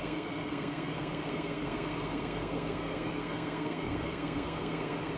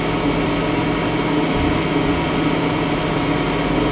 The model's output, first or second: first